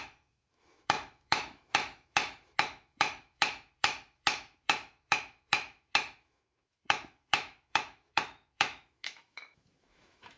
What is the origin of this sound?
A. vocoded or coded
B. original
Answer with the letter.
A